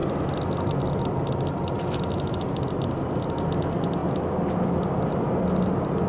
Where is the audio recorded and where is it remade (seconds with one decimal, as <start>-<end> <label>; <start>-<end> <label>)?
0.0-6.1 recorded